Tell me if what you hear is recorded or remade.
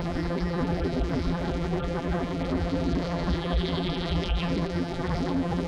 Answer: remade